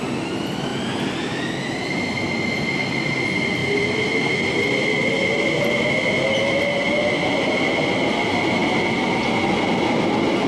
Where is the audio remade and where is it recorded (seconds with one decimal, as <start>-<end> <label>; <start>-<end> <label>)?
0.0-10.5 recorded